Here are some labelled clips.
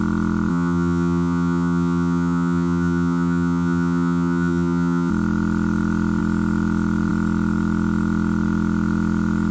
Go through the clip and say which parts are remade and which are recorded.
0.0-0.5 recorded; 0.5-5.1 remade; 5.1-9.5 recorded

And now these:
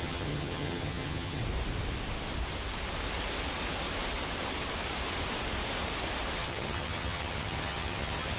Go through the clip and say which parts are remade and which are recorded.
0.0-1.4 remade; 1.4-6.4 recorded; 6.4-8.4 remade

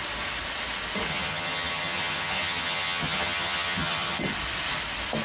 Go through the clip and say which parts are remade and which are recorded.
0.0-1.1 recorded; 1.1-4.2 remade; 4.2-5.2 recorded

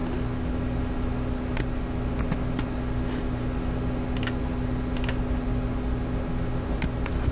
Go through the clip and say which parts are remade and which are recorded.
0.0-7.3 recorded

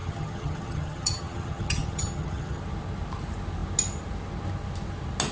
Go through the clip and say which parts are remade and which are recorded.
0.0-2.6 remade; 2.6-5.3 recorded